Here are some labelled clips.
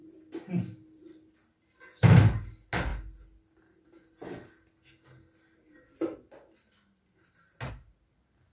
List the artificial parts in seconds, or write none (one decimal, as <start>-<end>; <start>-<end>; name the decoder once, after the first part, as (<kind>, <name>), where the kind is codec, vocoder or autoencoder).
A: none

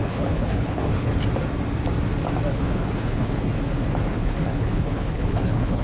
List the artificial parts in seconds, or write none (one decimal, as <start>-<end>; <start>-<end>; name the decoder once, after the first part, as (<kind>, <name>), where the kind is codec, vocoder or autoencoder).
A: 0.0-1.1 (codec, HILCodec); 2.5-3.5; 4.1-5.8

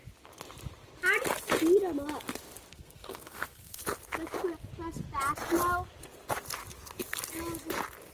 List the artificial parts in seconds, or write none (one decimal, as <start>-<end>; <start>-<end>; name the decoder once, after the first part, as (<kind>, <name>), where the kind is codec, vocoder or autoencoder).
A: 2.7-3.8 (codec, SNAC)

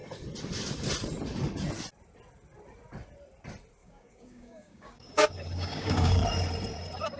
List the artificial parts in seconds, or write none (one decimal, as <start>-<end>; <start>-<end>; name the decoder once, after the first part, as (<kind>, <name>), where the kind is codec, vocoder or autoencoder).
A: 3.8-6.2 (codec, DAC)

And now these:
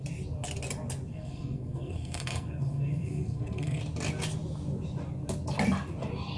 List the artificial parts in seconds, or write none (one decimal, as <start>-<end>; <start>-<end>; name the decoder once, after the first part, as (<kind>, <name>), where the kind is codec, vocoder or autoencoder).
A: 1.1-3.8 (codec, SNAC)

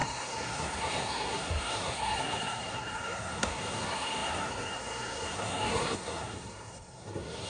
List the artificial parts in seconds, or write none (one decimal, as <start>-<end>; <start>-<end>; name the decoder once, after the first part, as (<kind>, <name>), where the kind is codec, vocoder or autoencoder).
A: 0.0-7.5 (codec, SNAC)